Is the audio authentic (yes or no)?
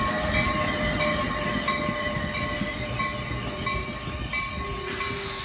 yes